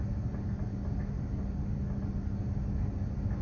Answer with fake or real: real